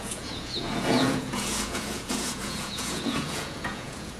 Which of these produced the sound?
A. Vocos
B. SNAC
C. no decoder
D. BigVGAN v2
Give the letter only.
A